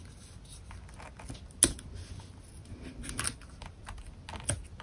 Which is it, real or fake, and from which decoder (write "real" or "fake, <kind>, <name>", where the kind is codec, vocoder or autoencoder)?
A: real